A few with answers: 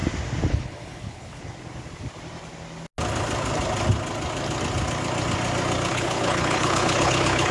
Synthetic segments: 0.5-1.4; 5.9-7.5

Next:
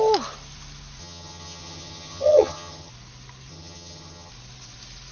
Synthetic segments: 1.0-2.9; 3.5-4.3

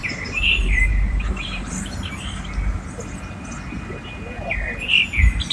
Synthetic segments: 0.0-2.2

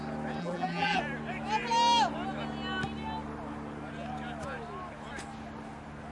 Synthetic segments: 0.4-1.0

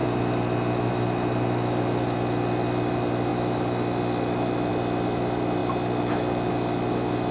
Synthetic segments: none